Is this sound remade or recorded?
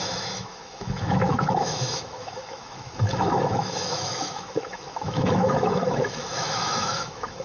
remade